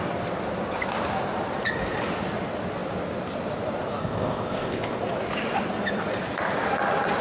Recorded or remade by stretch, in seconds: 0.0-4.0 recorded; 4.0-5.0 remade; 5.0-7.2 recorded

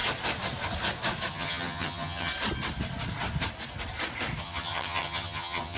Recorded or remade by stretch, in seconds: 0.0-1.3 recorded; 1.3-2.3 remade; 2.3-4.4 recorded; 4.4-5.8 remade

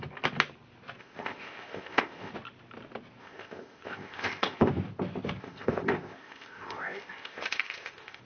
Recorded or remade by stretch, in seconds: 0.0-1.0 recorded; 1.0-2.3 remade; 2.3-3.2 recorded; 3.2-4.7 remade; 4.7-5.4 recorded; 5.4-8.2 remade

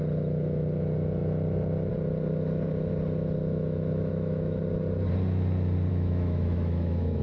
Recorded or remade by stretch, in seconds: 0.0-3.4 recorded; 3.4-4.6 remade; 4.6-5.9 recorded; 5.9-7.2 remade

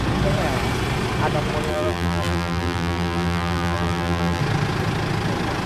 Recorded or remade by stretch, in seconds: 0.0-1.7 recorded; 1.7-4.4 remade; 4.4-5.7 recorded

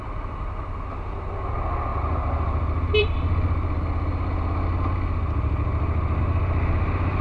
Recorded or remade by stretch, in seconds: 0.0-7.2 recorded

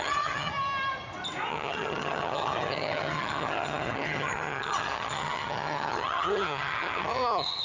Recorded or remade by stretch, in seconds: 0.0-0.5 remade; 0.5-1.5 recorded; 1.5-7.6 remade